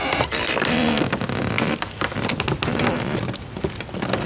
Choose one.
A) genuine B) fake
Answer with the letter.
A